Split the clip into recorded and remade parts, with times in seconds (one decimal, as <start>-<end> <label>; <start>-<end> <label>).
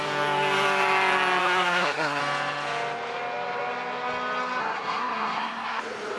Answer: 0.0-1.4 recorded; 1.4-2.2 remade; 2.2-4.6 recorded; 4.6-5.8 remade; 5.8-6.2 recorded